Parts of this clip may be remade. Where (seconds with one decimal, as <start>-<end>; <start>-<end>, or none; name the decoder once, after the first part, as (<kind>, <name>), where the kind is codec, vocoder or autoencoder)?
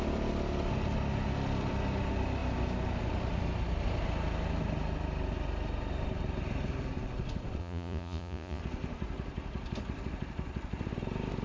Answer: 7.6-8.6 (vocoder, Vocos)